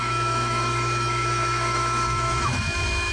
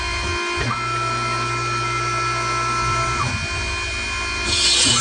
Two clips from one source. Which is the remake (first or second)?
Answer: first